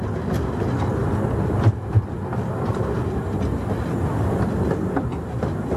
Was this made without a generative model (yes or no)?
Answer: yes